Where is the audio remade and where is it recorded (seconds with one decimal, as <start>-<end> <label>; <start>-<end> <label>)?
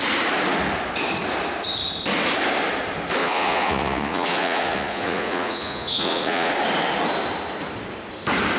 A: 0.0-3.2 recorded; 3.2-6.5 remade; 6.5-8.6 recorded